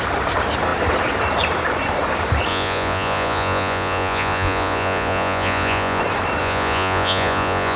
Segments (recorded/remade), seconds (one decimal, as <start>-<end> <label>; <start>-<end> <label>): 0.0-2.5 recorded; 2.5-6.0 remade; 6.0-6.4 recorded; 6.4-7.8 remade